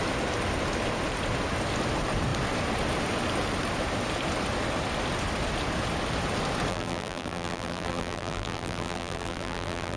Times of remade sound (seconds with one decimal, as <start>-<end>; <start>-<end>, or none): 6.7-10.0

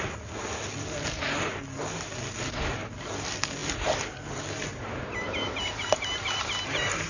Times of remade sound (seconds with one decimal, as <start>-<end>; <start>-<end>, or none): 4.7-7.1

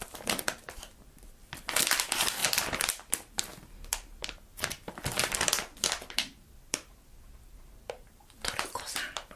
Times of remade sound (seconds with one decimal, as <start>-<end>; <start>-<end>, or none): 0.0-3.5; 7.5-9.4

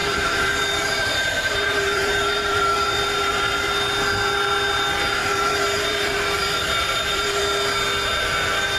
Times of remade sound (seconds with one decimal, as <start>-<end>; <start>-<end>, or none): 0.0-3.5; 5.2-7.4

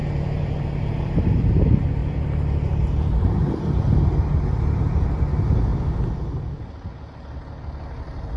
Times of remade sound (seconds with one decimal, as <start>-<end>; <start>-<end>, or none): 0.0-0.6; 2.0-3.7

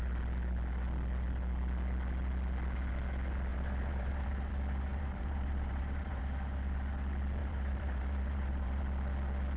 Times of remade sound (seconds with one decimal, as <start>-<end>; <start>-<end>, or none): 3.5-4.5; 4.9-6.2; 7.4-8.8

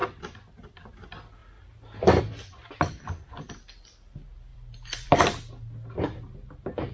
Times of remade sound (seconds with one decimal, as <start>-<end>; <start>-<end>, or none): 0.0-0.8; 1.4-2.2; 2.6-3.8; 4.5-5.1